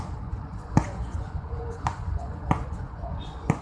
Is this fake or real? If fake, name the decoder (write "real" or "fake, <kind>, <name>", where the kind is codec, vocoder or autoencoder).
fake, vocoder, Vocos